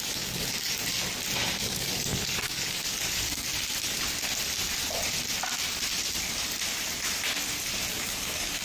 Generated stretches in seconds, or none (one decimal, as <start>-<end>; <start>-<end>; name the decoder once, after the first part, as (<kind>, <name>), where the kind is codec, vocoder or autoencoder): 0.0-0.8 (codec, DAC); 1.6-3.5; 7.9-8.6